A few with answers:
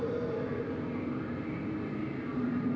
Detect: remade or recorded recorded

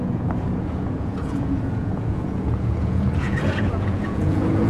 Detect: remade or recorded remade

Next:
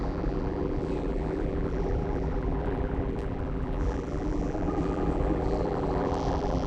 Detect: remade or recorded remade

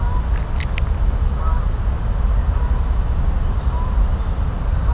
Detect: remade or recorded recorded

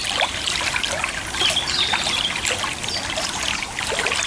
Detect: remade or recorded recorded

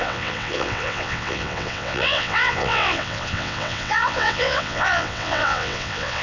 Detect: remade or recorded remade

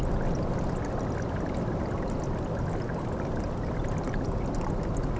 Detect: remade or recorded recorded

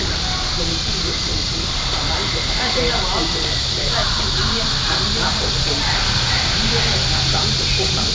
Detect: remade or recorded recorded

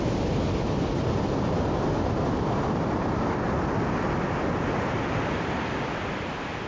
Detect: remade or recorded recorded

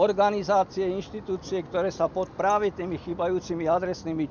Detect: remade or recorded recorded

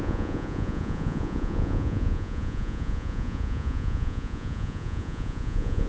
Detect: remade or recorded remade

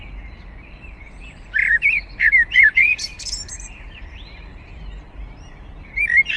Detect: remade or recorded remade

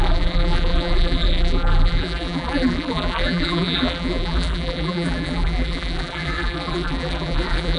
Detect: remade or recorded remade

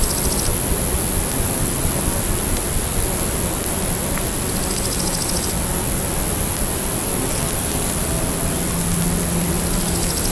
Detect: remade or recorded recorded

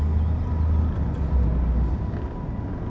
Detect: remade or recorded recorded